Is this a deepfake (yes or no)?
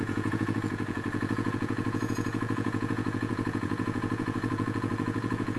yes